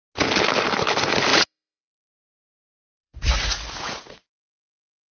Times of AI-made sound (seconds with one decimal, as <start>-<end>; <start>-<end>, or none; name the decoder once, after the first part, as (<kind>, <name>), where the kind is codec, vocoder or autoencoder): 1.3-4.4 (vocoder, Vocos)